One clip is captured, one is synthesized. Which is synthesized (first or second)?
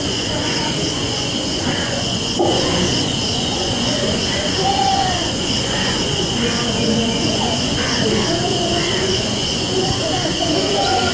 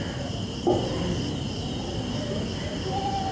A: first